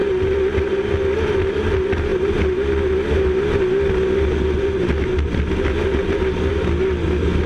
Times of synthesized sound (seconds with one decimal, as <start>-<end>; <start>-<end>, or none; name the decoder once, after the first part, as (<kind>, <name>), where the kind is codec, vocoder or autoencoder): none